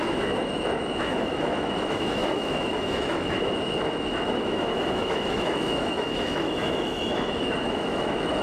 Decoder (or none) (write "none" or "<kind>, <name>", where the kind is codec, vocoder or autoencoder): autoencoder, DAC-VAE